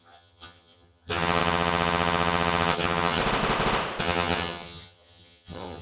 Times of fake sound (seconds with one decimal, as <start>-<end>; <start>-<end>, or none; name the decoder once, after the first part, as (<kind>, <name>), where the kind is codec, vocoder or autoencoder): 0.0-3.2 (vocoder, HiFi-GAN); 4.0-5.8